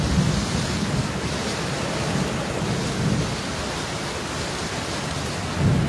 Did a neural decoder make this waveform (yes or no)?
no